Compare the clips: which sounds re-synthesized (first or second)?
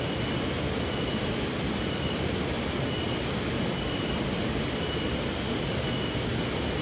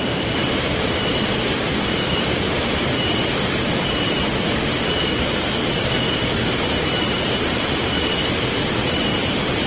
second